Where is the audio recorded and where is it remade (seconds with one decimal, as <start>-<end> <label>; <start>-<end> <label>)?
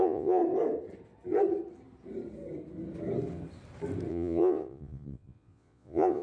0.0-0.4 remade; 0.4-4.1 recorded; 4.1-6.2 remade